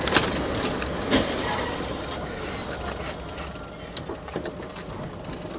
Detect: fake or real real